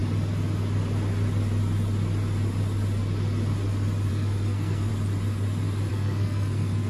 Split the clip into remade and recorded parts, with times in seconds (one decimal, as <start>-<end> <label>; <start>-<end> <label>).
0.0-4.1 recorded; 4.1-4.9 remade; 4.9-5.9 recorded; 5.9-6.9 remade